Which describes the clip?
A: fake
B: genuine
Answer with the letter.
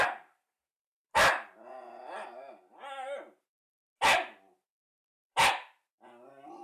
B